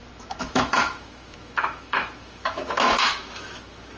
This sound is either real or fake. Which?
fake